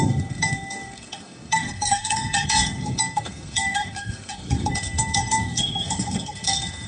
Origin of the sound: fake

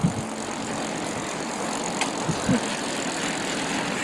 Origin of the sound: real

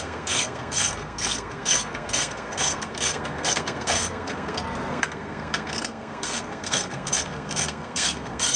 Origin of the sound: fake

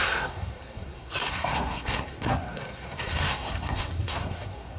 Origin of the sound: fake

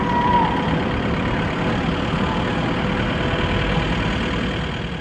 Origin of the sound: real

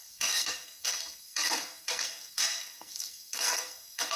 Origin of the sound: fake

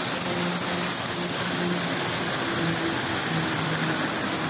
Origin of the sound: real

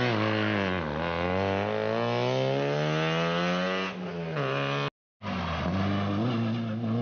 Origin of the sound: real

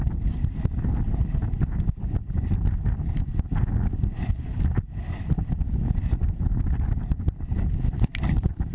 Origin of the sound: real